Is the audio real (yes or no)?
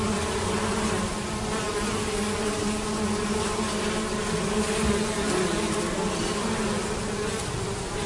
yes